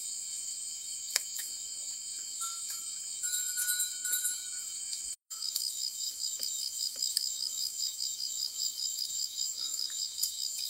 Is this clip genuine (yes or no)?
no